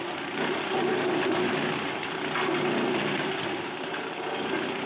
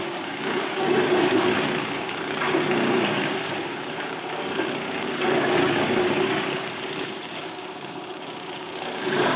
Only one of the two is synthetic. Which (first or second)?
second